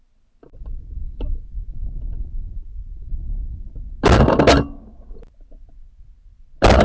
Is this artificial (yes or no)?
no